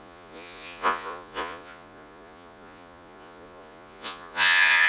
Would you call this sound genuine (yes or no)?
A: no